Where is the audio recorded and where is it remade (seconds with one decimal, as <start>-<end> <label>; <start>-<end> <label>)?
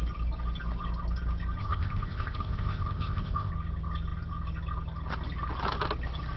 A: 0.0-1.6 recorded; 1.6-3.5 remade; 3.5-6.4 recorded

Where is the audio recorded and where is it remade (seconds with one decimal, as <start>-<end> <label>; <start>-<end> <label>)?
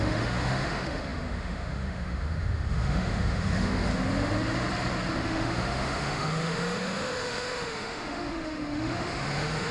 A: 0.0-3.9 remade; 3.9-5.1 recorded; 5.1-9.7 remade